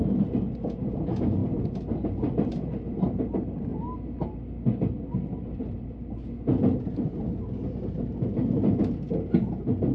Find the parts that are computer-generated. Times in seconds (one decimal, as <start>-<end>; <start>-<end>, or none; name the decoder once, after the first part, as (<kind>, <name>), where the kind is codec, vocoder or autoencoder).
none